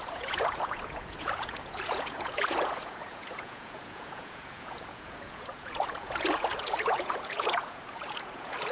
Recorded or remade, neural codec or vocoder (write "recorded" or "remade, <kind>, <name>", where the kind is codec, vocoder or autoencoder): remade, vocoder, Vocos